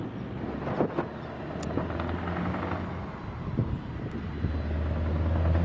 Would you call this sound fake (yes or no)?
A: no